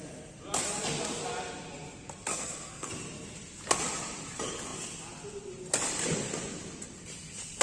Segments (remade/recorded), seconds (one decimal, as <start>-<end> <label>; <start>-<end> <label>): 0.0-2.3 recorded; 2.3-2.9 remade; 2.9-7.6 recorded